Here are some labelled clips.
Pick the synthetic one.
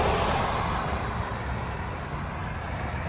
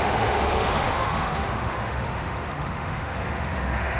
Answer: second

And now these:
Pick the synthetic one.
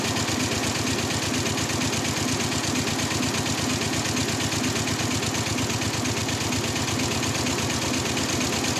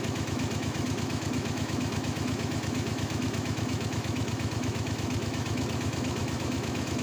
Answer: second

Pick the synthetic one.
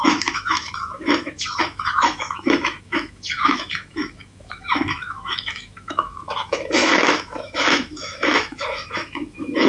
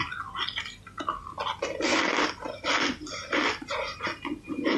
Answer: first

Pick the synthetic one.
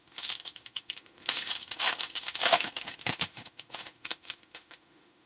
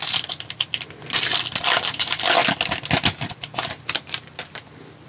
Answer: first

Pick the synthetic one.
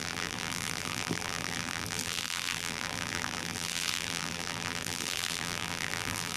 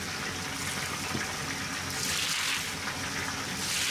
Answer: first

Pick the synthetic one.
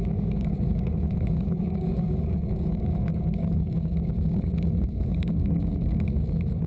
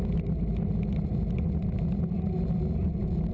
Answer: first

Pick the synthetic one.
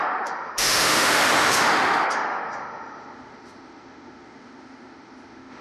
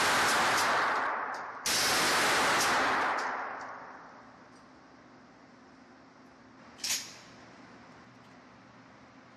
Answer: first